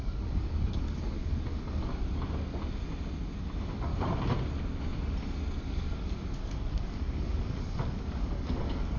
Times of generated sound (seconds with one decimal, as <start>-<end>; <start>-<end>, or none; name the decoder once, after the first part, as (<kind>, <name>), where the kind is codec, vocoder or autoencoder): 0.0-1.9 (codec, DAC); 3.4-3.9; 5.6-9.0